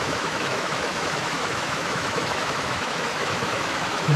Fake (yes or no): yes